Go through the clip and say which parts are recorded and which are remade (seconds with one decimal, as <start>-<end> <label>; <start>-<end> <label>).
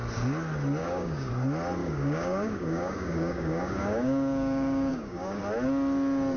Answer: 0.0-0.8 recorded; 0.8-1.3 remade; 1.3-1.8 recorded; 1.8-5.4 remade; 5.4-6.4 recorded